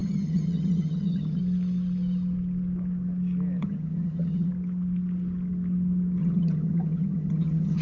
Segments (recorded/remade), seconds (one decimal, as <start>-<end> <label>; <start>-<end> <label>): 0.0-1.4 remade; 1.4-3.6 recorded; 3.6-4.5 remade; 4.5-6.2 recorded; 6.2-7.8 remade